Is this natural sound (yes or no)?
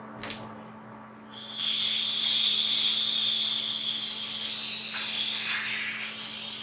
yes